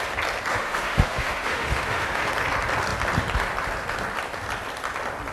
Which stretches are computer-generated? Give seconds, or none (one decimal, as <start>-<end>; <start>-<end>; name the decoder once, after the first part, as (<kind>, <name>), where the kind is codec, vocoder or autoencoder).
0.5-2.3 (autoencoder, DAC-VAE)